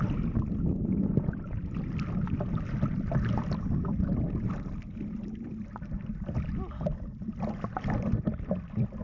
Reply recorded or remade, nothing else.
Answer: recorded